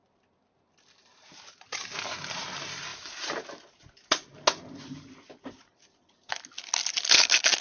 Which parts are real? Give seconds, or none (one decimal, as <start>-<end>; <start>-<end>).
0.0-1.1; 1.9-2.9; 3.6-7.6